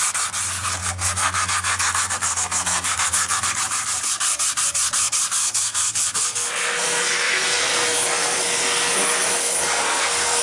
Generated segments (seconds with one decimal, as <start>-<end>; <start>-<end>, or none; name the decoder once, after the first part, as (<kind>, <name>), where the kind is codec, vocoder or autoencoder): 0.8-3.5 (codec, SNAC); 5.4-10.4